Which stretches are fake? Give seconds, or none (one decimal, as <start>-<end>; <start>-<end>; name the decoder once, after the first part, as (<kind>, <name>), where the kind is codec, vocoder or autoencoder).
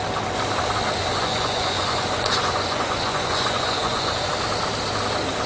1.0-4.3 (vocoder, Vocos)